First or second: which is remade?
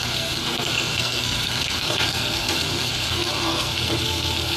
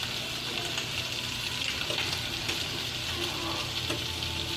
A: first